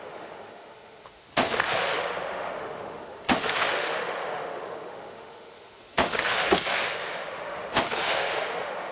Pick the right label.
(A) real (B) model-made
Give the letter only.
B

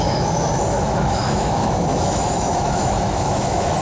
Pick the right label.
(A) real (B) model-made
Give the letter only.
B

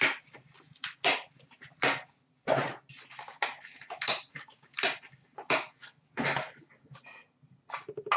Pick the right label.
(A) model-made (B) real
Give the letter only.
B